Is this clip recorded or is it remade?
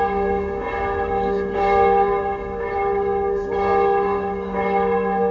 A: remade